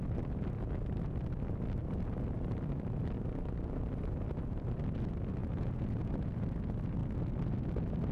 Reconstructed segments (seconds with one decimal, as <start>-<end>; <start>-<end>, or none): 5.4-6.1